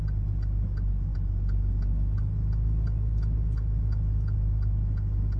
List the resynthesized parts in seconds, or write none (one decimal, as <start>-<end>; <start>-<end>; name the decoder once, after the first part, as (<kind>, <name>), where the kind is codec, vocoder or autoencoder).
none